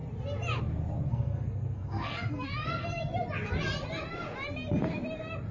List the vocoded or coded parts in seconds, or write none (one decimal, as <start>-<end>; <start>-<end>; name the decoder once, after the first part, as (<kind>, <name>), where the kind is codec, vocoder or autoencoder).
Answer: 1.1-3.1 (codec, SNAC)